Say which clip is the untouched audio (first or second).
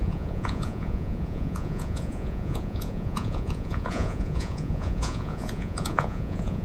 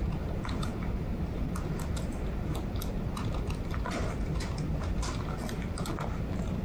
second